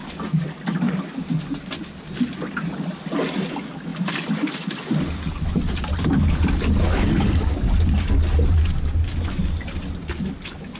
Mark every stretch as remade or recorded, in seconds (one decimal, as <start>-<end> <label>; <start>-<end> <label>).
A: 0.0-10.8 recorded